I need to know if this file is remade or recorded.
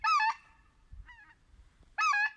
recorded